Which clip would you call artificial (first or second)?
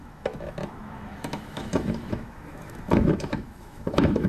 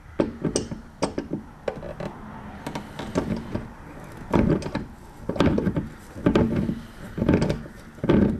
first